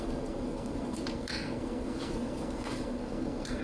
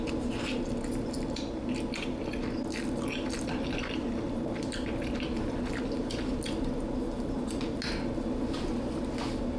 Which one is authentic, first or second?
second